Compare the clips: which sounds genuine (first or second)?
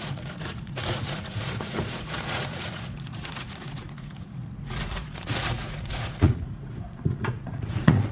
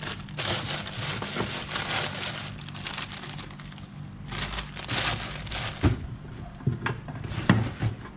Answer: second